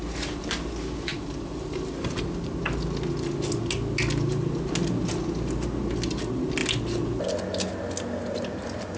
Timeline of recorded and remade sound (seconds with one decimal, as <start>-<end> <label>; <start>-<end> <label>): 0.0-9.0 recorded